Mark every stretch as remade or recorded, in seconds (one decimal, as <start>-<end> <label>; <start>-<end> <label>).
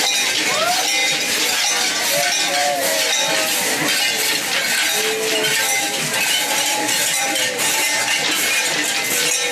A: 0.0-1.0 recorded; 1.0-1.7 remade; 1.7-2.6 recorded; 2.6-3.3 remade; 3.3-5.5 recorded; 5.5-8.9 remade; 8.9-9.5 recorded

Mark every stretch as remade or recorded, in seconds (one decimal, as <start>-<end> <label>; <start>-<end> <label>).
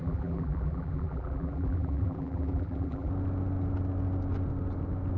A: 0.0-3.1 remade; 3.1-5.2 recorded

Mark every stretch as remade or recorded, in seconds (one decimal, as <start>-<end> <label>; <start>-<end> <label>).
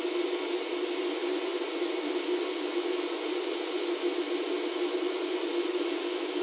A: 0.0-6.4 recorded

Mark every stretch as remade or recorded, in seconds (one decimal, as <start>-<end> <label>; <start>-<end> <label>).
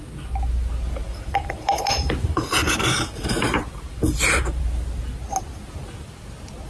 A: 0.0-1.0 recorded; 1.0-4.6 remade; 4.6-6.7 recorded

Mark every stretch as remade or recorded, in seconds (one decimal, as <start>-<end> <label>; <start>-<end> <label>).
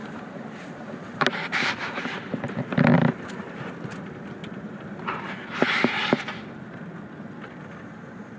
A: 0.0-6.0 remade; 6.0-7.8 recorded; 7.8-8.4 remade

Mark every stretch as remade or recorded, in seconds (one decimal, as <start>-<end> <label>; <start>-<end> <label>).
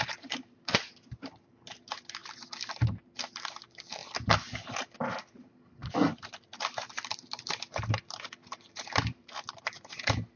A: 0.0-2.2 remade; 2.2-2.7 recorded; 2.7-4.0 remade; 4.0-5.3 recorded; 5.3-10.4 remade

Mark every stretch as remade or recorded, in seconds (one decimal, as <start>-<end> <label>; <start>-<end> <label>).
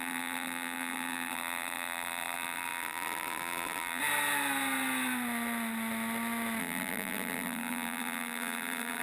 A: 0.0-4.0 remade; 4.0-6.6 recorded; 6.6-9.0 remade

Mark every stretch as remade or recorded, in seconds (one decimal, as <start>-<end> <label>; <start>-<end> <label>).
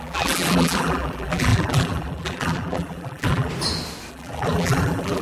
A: 0.0-3.5 remade; 3.5-4.1 recorded; 4.1-5.2 remade